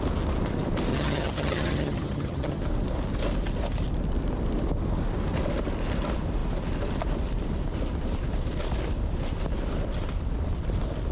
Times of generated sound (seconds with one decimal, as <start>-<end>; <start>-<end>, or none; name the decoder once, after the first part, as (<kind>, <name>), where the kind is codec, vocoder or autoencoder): 0.9-2.6 (vocoder, HiFi-GAN)